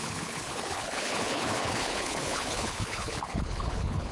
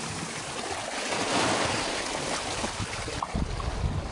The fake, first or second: first